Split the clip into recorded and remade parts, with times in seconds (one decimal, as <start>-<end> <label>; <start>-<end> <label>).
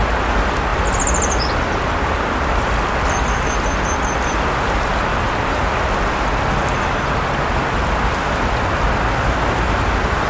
0.0-10.3 recorded